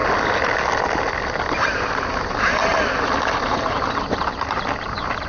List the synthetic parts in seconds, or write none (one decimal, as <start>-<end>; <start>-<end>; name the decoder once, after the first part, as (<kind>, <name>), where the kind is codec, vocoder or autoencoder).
3.2-5.3 (vocoder, BigVGAN v2)